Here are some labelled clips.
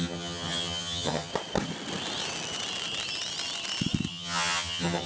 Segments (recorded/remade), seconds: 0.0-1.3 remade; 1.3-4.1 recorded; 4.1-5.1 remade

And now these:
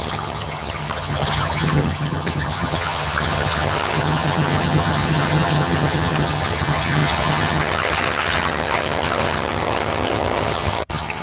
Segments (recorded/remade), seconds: 0.0-11.2 remade

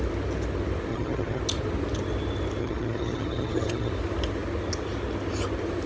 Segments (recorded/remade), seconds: 0.0-0.9 recorded; 0.9-1.4 remade; 1.4-2.6 recorded; 2.6-3.9 remade; 3.9-5.9 recorded

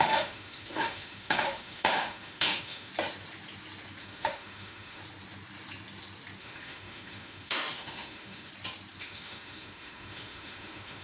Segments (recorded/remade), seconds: 0.0-2.9 remade; 2.9-4.0 recorded; 4.0-5.0 remade; 5.0-6.4 recorded; 6.4-8.5 remade; 8.5-9.0 recorded; 9.0-11.0 remade